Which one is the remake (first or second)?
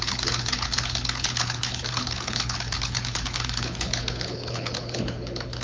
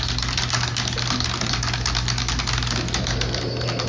first